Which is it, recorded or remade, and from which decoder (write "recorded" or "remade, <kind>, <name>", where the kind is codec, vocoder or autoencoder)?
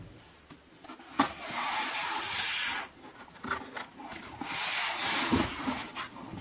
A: recorded